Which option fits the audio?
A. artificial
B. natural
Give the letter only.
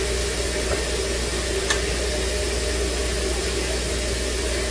B